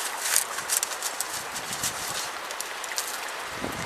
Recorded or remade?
recorded